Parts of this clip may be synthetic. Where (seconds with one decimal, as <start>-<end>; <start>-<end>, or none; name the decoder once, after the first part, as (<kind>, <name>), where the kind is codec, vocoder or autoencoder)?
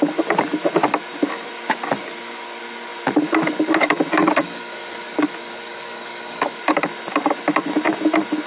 4.2-6.6 (codec, DAC)